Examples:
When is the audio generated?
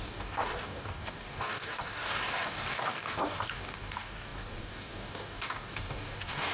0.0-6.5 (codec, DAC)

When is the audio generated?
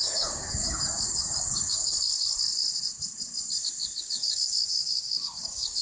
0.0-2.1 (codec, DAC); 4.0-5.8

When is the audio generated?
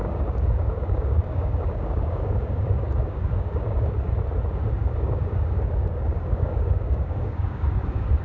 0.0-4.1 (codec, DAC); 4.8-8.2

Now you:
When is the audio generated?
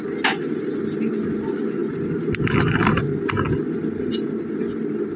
none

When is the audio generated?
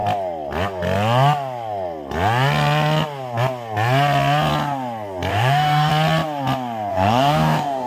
5.3-5.9 (codec, DAC); 6.9-7.9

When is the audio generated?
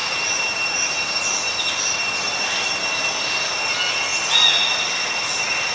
none